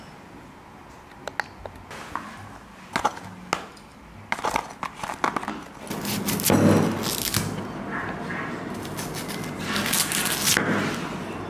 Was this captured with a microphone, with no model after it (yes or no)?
yes